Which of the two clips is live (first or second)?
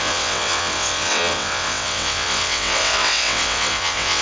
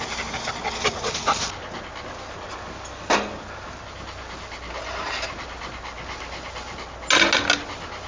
second